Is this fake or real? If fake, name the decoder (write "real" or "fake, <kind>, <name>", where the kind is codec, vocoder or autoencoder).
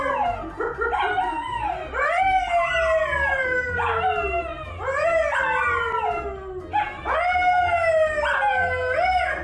real